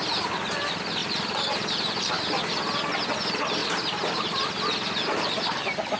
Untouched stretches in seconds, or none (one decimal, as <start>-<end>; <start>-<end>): 0.0-1.0; 2.1-3.6; 4.2-6.0